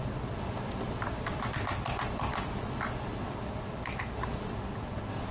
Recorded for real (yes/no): yes